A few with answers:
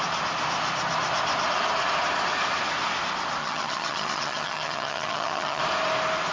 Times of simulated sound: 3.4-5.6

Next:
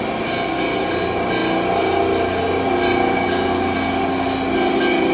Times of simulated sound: none

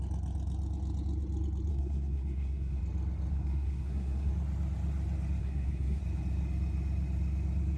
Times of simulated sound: 1.7-2.8; 3.3-4.3; 5.4-6.0

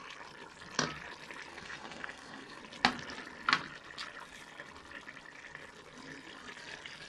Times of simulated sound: 1.5-2.6

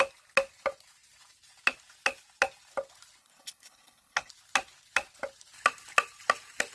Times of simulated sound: 3.2-4.3

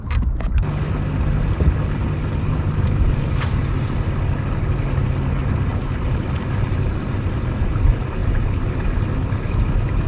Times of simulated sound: none

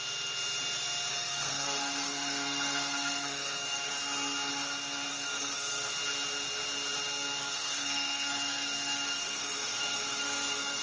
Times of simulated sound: 1.1-3.9; 5.1-5.9; 7.4-10.8